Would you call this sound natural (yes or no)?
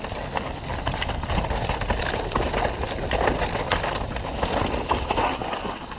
yes